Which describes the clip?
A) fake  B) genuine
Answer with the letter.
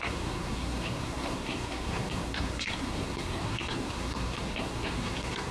A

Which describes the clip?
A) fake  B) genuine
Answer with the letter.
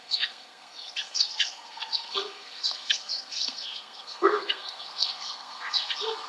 A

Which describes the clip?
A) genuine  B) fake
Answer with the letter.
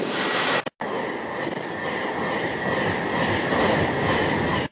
A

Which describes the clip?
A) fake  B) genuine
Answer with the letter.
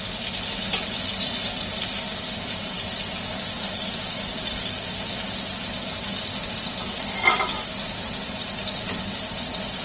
B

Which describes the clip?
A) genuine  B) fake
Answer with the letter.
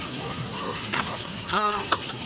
B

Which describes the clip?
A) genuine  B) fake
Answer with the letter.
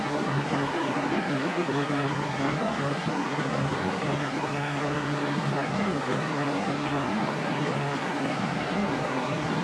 B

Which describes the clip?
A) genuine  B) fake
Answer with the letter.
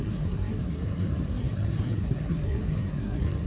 B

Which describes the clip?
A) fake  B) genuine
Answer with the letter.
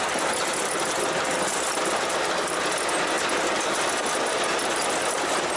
B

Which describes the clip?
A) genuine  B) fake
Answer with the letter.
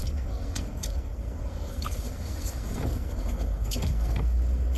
B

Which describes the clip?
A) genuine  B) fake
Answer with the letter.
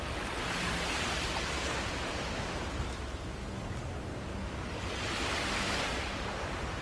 A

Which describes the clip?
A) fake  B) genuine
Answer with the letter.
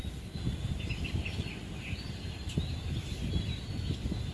B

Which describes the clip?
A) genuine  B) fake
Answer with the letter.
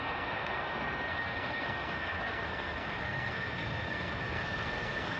B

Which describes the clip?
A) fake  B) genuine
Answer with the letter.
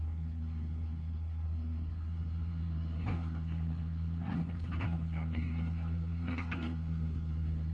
A